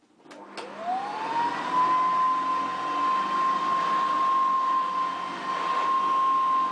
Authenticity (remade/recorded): recorded